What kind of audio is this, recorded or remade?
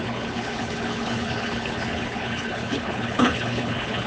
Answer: remade